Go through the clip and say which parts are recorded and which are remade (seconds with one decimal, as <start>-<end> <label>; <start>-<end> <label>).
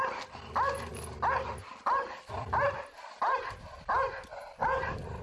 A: 0.0-5.2 recorded